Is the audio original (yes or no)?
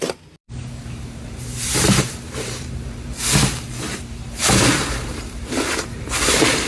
no